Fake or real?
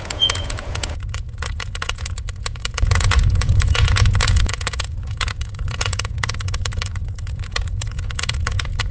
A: fake